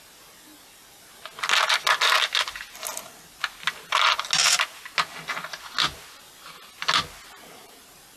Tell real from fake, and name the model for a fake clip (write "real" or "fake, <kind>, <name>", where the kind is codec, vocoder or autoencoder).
real